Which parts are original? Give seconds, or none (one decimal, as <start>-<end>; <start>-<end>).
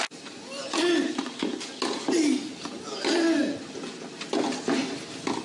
0.0-5.4